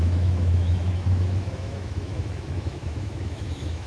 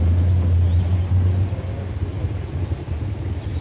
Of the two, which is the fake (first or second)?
first